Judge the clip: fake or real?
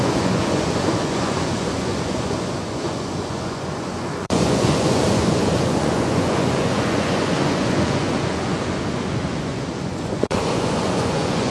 fake